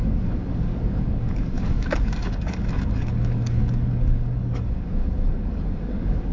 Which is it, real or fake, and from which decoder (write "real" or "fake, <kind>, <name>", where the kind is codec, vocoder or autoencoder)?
fake, codec, DAC